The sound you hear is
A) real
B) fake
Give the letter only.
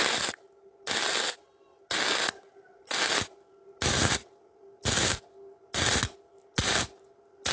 A